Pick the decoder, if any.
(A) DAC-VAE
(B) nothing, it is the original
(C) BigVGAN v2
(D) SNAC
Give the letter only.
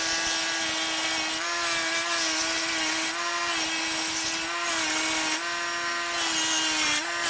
B